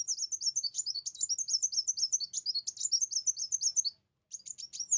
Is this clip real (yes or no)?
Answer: yes